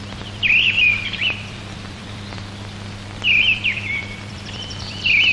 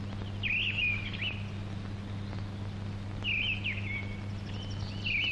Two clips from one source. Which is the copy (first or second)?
first